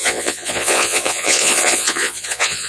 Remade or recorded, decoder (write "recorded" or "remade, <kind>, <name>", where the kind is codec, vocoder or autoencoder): remade, vocoder, Vocos